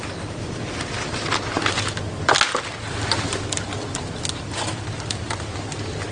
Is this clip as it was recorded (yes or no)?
yes